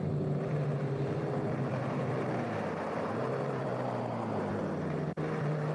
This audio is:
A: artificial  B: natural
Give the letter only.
A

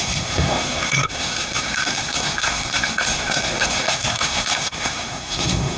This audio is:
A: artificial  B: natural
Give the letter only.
A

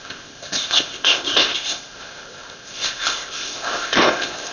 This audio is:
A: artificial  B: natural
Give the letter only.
A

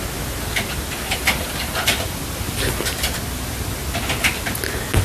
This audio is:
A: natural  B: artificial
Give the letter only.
A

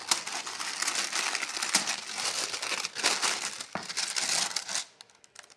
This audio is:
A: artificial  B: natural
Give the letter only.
B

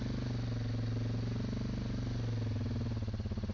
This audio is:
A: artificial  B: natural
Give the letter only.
B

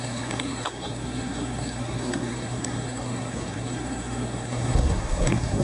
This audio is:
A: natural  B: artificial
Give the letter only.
B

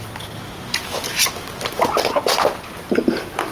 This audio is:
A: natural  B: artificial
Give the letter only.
A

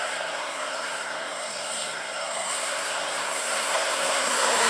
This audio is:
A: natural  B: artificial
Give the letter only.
B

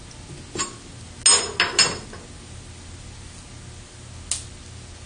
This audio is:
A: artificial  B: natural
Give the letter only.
B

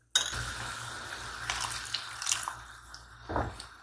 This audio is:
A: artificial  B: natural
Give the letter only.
B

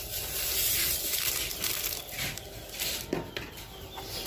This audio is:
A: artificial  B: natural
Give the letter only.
A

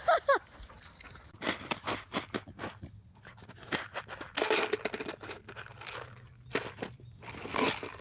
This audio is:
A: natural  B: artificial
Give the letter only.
A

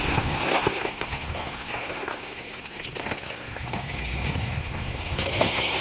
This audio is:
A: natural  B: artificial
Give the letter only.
B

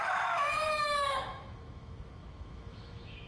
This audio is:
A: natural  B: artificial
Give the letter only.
B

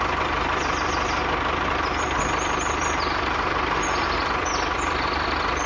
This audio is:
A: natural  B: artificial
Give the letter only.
B